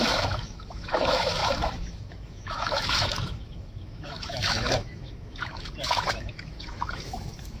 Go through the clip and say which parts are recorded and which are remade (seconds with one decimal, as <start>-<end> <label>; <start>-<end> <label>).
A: 0.0-7.6 remade